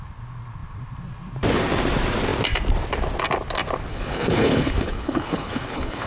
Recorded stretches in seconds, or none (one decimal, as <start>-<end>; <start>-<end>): 0.0-3.9